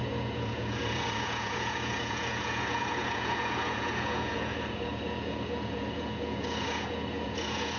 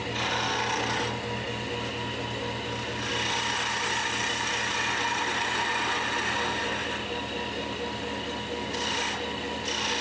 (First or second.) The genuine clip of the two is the second